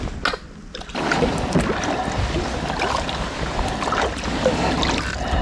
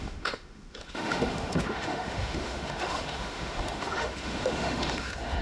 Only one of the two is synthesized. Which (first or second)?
second